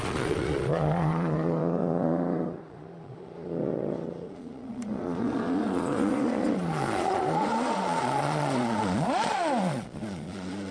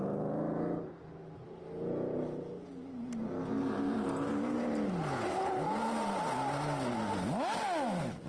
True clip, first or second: second